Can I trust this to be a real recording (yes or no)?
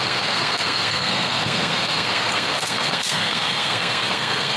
no